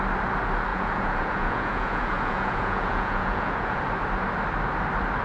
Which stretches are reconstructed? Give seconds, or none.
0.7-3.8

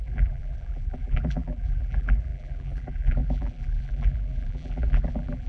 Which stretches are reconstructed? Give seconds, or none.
0.0-5.5